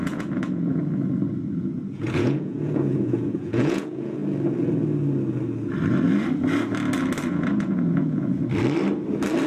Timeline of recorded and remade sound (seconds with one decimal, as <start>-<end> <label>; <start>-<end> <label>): 0.0-0.8 remade; 0.8-1.6 recorded; 1.6-4.2 remade; 4.2-7.3 recorded; 7.3-8.4 remade; 8.4-9.5 recorded

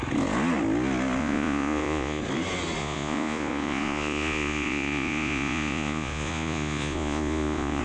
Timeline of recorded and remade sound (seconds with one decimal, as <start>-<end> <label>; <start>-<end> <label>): 0.0-1.2 recorded; 1.2-2.2 remade; 2.2-2.8 recorded; 2.8-7.8 remade

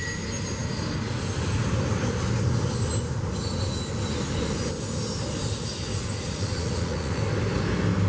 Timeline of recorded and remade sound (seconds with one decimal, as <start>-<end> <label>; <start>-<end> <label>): 0.0-5.9 recorded; 5.9-7.2 remade; 7.2-8.1 recorded

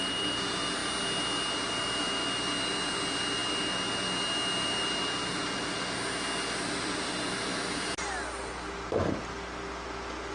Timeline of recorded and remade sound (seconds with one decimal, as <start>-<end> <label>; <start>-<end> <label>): 0.0-10.3 recorded

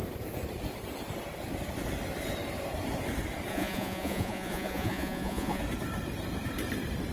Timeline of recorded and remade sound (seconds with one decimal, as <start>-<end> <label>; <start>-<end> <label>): 0.0-3.5 recorded; 3.5-5.6 remade; 5.6-7.1 recorded

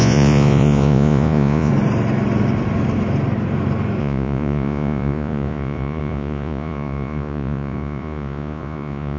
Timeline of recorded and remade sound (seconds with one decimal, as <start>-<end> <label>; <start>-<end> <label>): 0.0-1.7 remade; 1.7-4.0 recorded; 4.0-9.2 remade

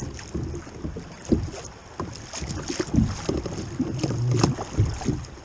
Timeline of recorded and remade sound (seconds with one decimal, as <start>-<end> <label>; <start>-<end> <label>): 0.0-5.4 recorded